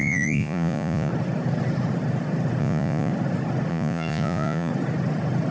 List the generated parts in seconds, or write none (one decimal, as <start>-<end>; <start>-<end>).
0.0-1.1; 2.6-3.1; 3.7-4.7